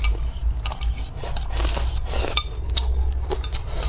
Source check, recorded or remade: recorded